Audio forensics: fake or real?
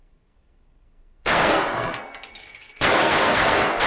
fake